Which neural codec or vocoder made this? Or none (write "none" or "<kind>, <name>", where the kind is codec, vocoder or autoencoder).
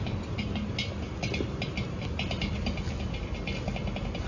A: none